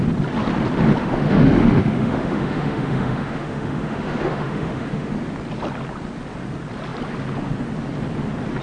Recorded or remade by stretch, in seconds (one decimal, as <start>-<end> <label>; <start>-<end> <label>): 0.0-1.0 recorded; 1.0-5.1 remade; 5.1-8.6 recorded